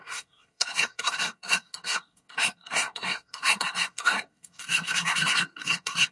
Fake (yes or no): yes